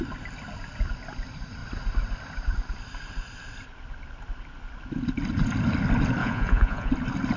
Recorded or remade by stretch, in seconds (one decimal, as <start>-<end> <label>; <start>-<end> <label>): 0.0-6.2 recorded; 6.2-6.9 remade; 6.9-7.4 recorded